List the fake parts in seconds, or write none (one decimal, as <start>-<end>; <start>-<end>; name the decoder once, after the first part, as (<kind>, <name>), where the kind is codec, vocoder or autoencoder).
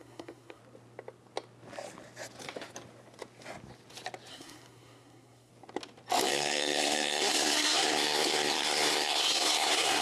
0.0-0.6 (codec, SNAC); 4.3-5.5; 6.3-10.0